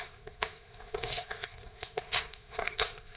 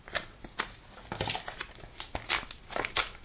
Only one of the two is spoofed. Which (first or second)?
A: first